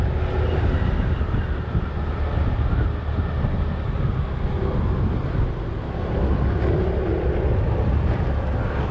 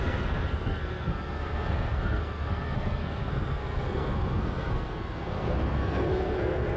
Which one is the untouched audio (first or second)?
first